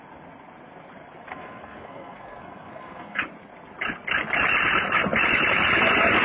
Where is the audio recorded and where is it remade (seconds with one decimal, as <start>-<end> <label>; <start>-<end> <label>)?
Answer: 0.0-1.3 recorded; 1.3-3.2 remade; 3.2-6.2 recorded